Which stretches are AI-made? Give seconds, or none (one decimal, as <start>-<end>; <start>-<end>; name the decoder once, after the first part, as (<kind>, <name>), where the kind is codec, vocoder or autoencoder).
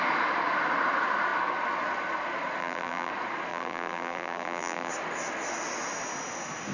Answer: 2.6-3.1 (vocoder, BigVGAN v2); 3.5-4.9